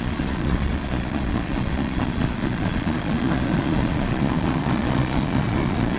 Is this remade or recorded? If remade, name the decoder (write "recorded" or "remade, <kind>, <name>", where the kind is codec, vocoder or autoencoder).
remade, vocoder, Vocos